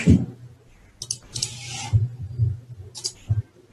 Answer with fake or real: real